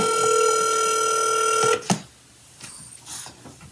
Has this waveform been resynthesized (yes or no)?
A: no